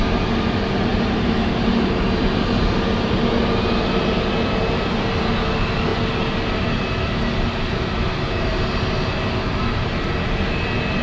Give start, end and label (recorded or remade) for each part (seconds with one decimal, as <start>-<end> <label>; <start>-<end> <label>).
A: 0.0-0.9 recorded; 0.9-3.4 remade; 3.4-11.0 recorded